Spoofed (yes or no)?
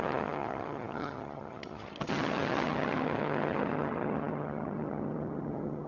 yes